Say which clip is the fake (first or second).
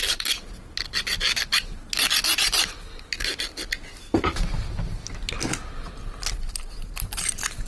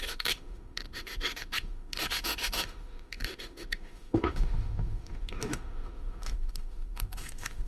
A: second